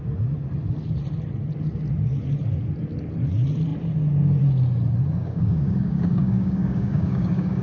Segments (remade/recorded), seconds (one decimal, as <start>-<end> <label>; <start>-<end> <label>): 0.0-5.2 recorded; 5.2-7.6 remade